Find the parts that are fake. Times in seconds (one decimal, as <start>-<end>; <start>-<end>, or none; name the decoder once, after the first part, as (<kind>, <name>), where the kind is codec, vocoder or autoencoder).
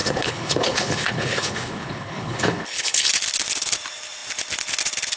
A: 0.0-3.1 (codec, HILCodec)